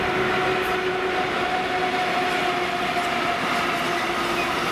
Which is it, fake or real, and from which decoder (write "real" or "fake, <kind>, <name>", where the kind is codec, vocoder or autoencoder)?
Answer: real